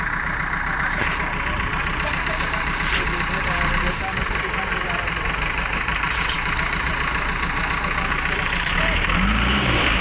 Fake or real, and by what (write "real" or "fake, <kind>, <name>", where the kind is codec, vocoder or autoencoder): fake, vocoder, BigVGAN v2